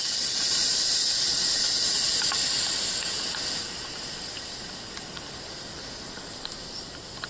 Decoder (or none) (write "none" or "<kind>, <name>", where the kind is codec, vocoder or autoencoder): none